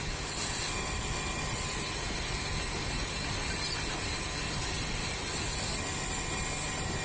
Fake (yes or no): no